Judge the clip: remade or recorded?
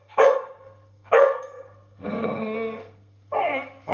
remade